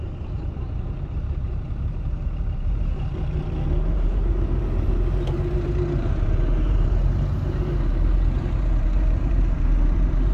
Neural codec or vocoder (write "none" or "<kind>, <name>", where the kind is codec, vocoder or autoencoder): vocoder, BigVGAN v2